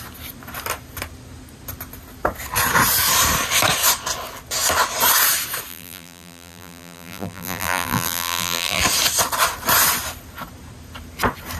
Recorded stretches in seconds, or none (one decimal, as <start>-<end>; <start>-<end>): 0.0-5.7; 8.8-11.6